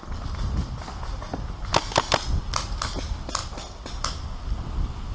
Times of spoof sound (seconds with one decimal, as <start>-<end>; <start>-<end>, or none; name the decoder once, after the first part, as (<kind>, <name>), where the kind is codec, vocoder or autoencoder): none